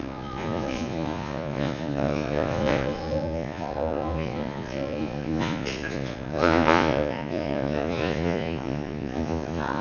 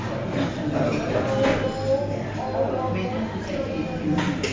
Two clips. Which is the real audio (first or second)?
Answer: second